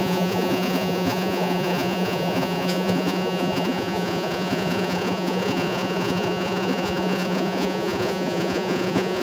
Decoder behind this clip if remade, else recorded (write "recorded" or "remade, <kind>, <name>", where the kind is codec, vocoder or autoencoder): remade, vocoder, Vocos